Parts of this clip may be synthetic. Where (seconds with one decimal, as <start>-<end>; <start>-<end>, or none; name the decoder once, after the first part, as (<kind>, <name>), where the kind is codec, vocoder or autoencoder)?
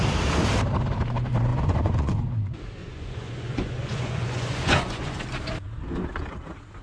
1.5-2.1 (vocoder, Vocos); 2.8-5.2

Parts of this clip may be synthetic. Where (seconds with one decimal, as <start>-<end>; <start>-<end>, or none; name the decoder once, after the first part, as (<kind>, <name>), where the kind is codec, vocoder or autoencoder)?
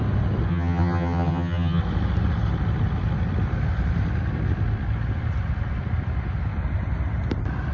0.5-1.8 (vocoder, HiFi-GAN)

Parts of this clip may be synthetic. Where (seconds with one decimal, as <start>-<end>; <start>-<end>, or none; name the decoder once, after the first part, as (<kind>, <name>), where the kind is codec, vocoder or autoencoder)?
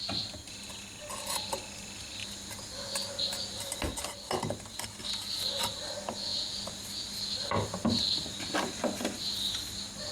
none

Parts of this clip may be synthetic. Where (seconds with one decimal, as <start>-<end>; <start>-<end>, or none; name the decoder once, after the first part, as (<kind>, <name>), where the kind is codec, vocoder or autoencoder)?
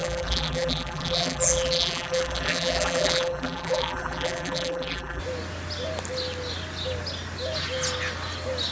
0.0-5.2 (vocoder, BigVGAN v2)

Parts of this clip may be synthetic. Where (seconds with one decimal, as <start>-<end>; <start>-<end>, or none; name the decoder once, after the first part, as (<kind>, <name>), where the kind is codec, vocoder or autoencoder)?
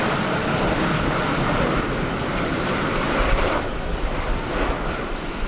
3.3-3.9 (vocoder, BigVGAN v2); 5.1-5.5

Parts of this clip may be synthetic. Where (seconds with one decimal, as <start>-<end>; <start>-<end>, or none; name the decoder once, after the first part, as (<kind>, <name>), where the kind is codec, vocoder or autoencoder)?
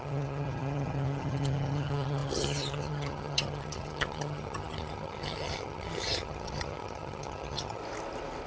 0.0-7.8 (vocoder, HiFi-GAN)